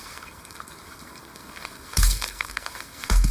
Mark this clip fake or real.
fake